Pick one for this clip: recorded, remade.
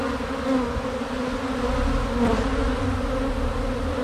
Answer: recorded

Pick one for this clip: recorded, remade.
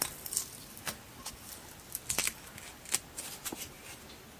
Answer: recorded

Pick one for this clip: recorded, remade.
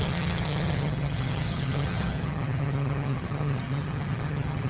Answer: remade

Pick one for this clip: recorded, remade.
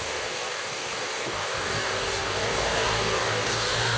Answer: remade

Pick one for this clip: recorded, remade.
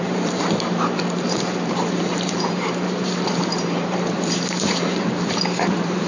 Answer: remade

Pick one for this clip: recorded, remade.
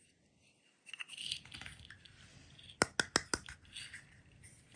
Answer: recorded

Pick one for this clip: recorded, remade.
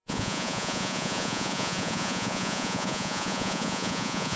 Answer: remade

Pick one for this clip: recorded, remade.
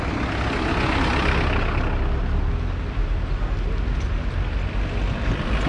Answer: recorded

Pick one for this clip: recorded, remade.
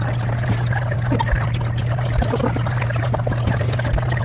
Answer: recorded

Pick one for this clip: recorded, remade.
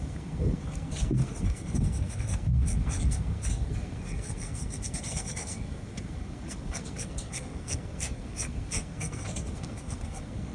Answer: remade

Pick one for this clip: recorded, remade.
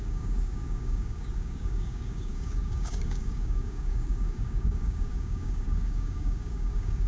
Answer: remade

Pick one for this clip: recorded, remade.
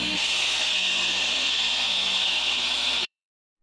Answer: remade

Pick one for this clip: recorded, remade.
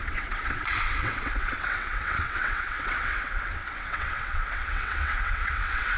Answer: remade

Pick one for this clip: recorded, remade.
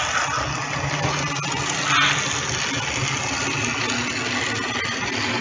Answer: recorded